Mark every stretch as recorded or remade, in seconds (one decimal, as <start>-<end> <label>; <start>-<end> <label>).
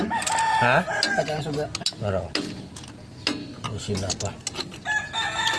0.0-5.6 recorded